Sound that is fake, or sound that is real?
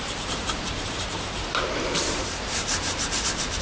fake